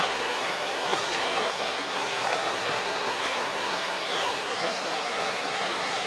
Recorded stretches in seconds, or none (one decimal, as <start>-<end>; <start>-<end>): none